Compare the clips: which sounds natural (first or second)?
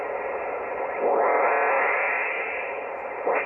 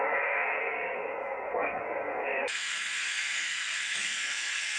first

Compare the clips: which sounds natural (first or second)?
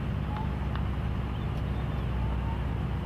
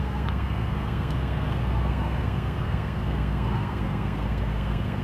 first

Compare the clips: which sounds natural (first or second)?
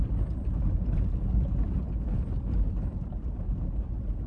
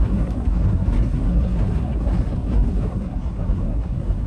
first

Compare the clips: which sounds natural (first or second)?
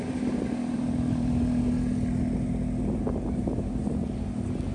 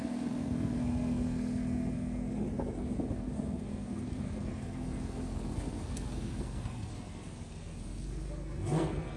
first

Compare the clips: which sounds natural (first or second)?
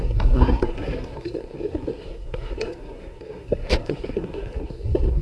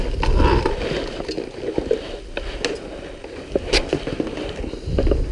second